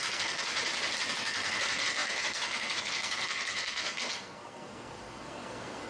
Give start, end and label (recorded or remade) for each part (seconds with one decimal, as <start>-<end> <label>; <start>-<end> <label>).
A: 0.0-0.5 remade; 0.5-1.1 recorded; 1.1-5.9 remade